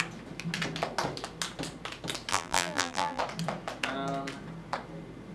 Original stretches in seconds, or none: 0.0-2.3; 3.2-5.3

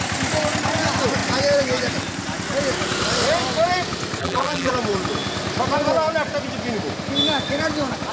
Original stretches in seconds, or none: 0.0-4.2; 4.7-8.1

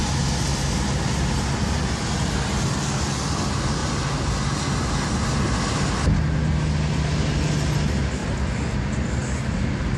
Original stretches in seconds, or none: 0.0-8.2; 8.8-10.0